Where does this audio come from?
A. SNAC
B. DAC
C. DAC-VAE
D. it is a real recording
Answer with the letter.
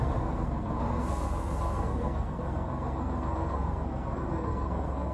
A